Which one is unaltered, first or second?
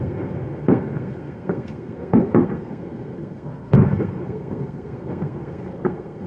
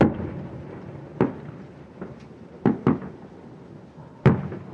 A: second